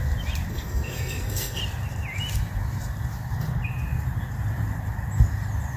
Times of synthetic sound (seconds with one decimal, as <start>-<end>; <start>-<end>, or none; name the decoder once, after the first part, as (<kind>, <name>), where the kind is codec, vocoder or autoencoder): 0.5-1.6 (codec, SNAC)